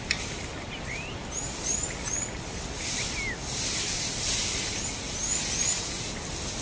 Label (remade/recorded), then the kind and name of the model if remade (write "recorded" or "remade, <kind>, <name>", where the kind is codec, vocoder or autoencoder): recorded